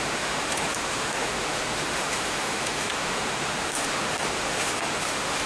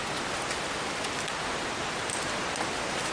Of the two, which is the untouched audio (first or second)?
second